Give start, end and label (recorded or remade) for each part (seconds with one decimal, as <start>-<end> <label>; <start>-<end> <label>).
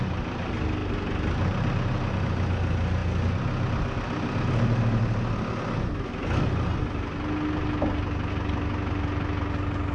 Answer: 0.0-9.9 recorded